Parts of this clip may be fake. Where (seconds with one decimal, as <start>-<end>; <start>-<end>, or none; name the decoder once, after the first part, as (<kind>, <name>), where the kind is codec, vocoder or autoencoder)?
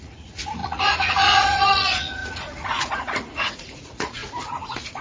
0.0-5.0 (vocoder, Vocos)